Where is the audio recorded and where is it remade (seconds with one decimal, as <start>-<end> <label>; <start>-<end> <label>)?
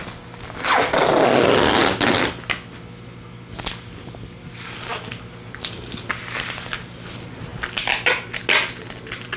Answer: 0.0-9.4 recorded